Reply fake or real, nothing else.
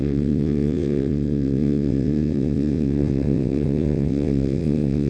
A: fake